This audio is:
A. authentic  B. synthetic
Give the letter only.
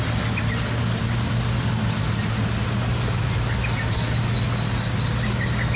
A